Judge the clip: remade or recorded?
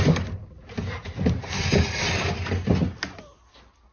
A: recorded